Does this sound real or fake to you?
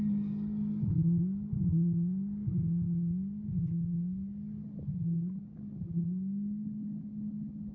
real